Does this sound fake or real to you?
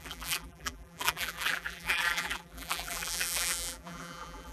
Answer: fake